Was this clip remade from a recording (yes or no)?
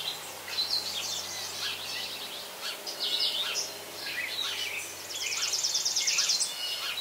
no